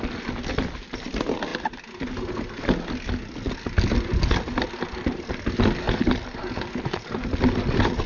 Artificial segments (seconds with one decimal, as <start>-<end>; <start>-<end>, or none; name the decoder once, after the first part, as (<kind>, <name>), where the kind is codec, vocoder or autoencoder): none